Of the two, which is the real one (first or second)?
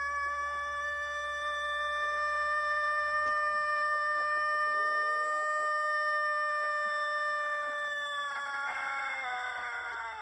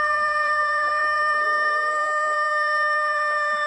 first